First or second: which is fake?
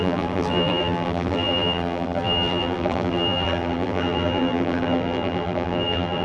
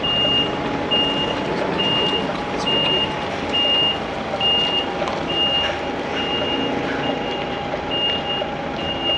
first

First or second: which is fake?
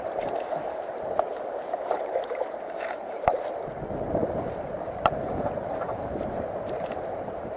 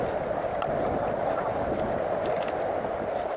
first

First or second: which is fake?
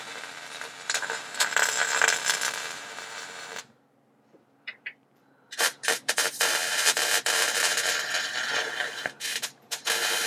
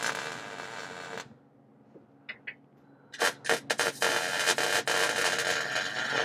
first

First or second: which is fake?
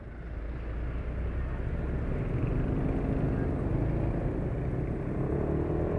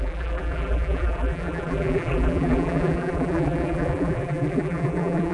second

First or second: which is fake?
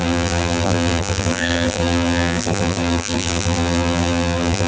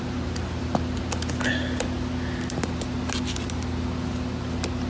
first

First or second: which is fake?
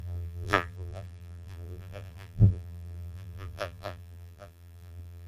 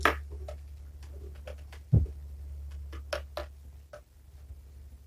first